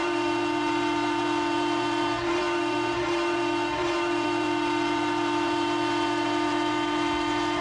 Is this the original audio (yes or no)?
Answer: no